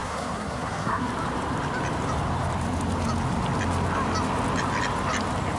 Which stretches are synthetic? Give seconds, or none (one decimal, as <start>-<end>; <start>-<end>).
0.0-1.1